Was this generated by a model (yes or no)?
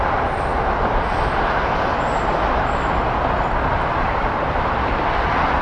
no